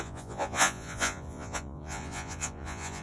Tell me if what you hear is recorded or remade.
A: remade